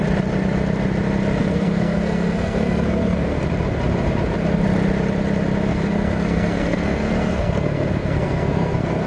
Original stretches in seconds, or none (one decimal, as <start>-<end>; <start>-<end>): 0.0-1.4; 3.4-5.7